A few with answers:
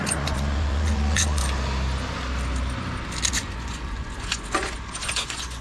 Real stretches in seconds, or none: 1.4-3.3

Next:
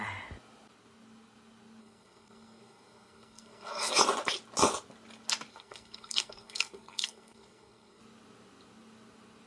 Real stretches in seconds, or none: 0.0-1.8; 3.9-5.5; 8.0-9.5

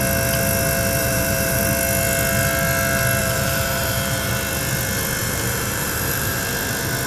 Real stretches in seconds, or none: 0.0-1.0; 1.6-3.2; 4.3-5.2; 6.4-7.1

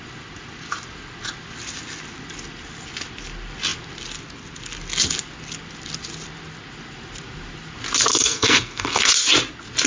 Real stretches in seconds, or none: 0.0-8.1; 9.1-9.9

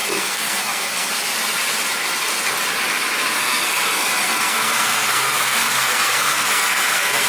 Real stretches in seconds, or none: 1.1-3.4

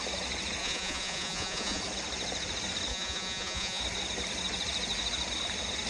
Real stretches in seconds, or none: 0.0-0.6; 1.8-2.9; 3.8-5.9

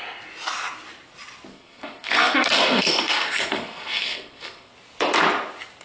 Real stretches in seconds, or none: 0.0-1.5; 4.7-5.8